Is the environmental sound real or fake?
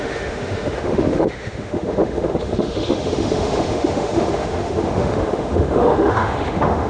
fake